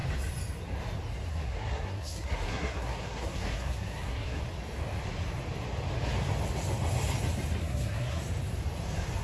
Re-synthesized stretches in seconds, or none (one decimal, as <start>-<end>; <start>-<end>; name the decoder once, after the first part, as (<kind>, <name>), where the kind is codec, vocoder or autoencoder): 1.3-4.4 (codec, SNAC); 7.6-8.2